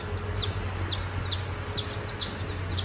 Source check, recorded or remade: recorded